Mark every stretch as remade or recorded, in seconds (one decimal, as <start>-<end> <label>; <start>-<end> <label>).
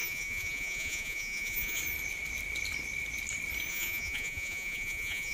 0.0-1.8 remade; 1.8-3.7 recorded; 3.7-5.3 remade